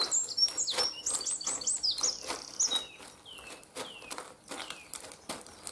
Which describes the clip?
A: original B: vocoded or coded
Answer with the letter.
A